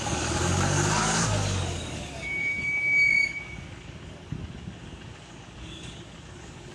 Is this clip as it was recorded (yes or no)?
no